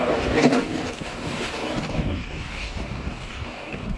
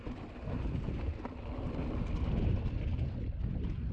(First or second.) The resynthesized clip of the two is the first